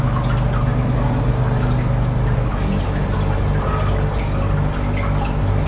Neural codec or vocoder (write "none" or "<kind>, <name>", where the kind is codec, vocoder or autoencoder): none